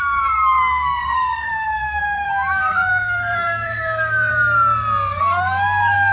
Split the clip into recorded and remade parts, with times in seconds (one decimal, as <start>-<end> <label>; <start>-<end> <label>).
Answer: 0.0-4.3 remade; 4.3-5.2 recorded; 5.2-6.1 remade